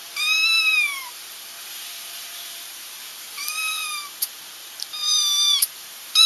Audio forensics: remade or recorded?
remade